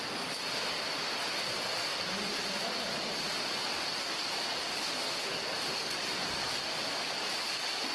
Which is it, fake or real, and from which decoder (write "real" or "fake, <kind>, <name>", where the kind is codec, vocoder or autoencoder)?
real